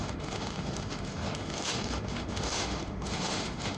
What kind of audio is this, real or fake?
fake